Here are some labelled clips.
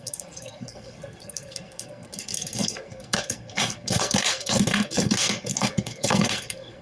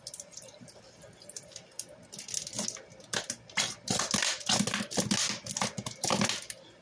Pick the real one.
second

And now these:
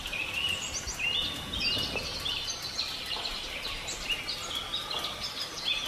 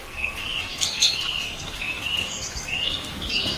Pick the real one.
first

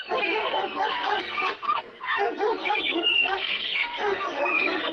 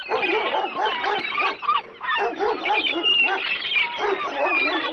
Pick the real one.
second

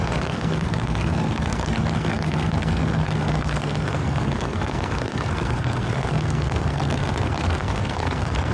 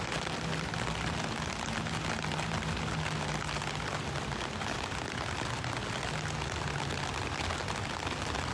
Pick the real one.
second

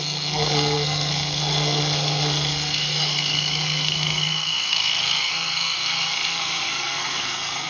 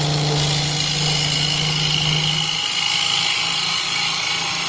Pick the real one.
second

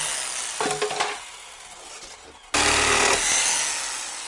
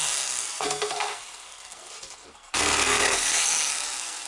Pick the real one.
first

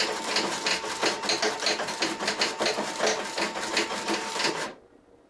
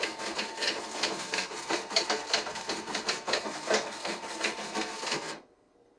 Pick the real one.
first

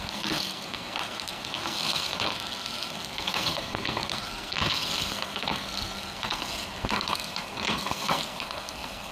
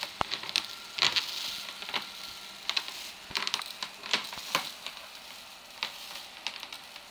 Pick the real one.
second